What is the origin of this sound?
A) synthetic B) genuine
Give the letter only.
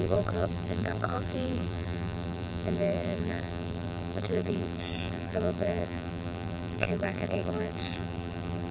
A